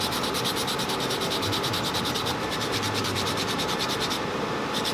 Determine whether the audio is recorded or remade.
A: remade